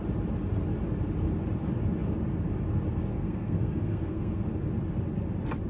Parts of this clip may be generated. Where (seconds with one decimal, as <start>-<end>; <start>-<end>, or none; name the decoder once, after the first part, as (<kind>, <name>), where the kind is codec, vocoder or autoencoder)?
3.1-4.4 (codec, SNAC)

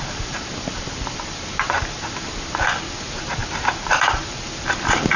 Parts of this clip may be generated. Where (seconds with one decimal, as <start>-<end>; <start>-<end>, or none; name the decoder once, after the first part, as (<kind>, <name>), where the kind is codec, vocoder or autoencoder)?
0.0-5.2 (vocoder, BigVGAN v2)

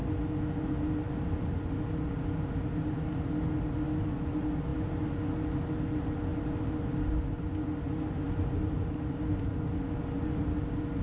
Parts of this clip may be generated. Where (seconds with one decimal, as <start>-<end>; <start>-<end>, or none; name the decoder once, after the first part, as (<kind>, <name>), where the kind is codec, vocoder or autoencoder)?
none

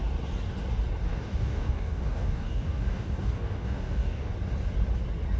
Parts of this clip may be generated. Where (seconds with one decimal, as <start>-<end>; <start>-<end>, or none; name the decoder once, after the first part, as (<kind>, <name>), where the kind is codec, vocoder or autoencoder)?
1.1-4.3 (codec, DAC)

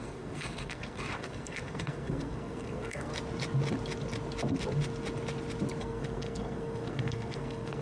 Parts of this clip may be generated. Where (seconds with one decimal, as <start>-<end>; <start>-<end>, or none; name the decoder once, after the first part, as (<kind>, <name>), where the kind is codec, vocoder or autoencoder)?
0.0-3.1 (codec, SNAC); 5.8-7.8

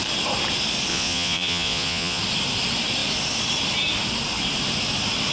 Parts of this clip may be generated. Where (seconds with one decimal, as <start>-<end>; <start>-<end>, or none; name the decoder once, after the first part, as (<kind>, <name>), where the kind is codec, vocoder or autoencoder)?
0.9-2.2 (vocoder, Vocos)

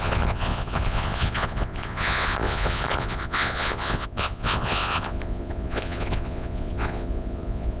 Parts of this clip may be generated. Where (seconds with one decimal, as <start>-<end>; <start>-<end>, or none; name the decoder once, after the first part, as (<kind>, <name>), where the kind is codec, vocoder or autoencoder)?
0.0-7.8 (vocoder, Vocos)

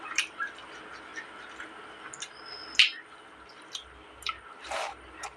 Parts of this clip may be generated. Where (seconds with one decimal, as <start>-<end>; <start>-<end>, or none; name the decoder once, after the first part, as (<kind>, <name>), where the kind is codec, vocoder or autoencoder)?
0.0-1.1 (vocoder, BigVGAN v2); 3.6-5.4